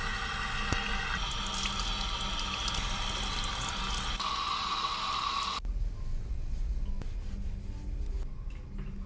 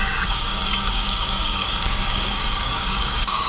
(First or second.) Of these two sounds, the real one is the first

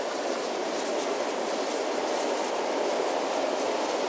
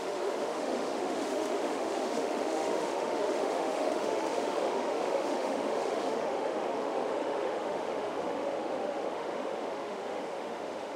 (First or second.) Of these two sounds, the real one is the first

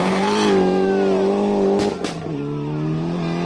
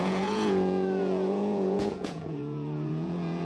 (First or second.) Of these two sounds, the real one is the first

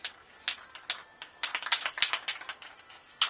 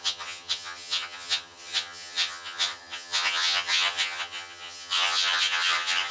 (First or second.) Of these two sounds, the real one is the first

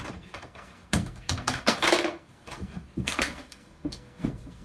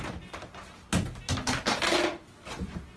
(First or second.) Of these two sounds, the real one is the second